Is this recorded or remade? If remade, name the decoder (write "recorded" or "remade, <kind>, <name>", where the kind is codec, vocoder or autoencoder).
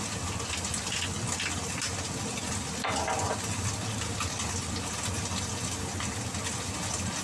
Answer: recorded